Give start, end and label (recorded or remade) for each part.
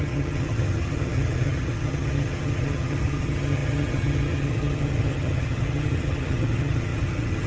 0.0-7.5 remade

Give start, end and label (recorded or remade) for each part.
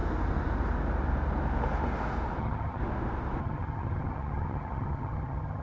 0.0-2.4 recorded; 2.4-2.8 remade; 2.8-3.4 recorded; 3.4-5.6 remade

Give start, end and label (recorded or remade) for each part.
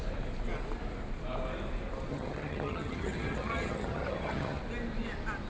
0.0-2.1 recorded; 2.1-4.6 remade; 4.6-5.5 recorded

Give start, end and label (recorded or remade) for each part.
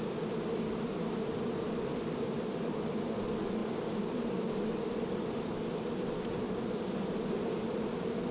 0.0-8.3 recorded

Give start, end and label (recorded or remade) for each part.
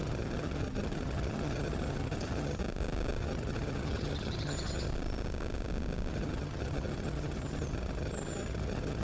0.0-2.6 remade; 2.6-3.2 recorded; 3.2-4.9 remade; 4.9-6.1 recorded; 6.1-9.0 remade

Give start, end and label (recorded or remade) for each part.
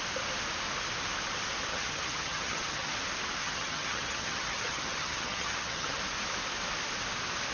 0.0-1.7 recorded; 1.7-2.9 remade; 2.9-3.4 recorded; 3.4-6.0 remade; 6.0-7.5 recorded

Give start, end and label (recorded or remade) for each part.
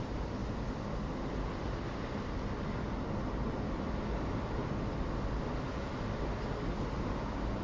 0.0-7.6 recorded